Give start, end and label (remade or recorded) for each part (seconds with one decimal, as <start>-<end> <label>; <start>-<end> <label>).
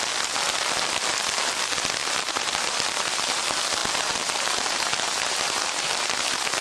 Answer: 0.0-2.0 recorded; 2.0-3.4 remade; 3.4-3.8 recorded; 3.8-6.6 remade